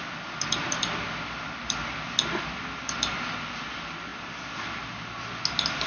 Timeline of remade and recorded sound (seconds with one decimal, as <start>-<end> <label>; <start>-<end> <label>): 0.0-5.9 recorded